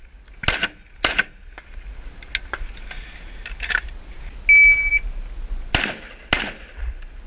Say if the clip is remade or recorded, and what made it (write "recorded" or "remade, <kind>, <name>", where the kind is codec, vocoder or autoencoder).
recorded